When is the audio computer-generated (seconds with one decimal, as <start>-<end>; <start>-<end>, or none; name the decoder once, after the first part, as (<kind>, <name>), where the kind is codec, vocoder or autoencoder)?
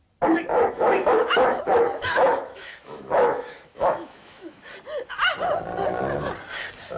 0.5-4.7 (autoencoder, DAC-VAE)